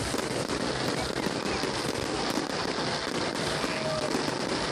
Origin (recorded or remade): recorded